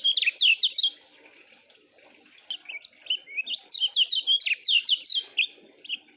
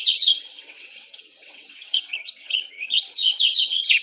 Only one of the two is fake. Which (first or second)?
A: second